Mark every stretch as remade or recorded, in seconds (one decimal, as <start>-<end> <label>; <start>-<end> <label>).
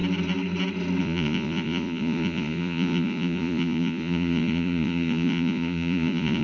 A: 0.0-1.0 recorded; 1.0-6.4 remade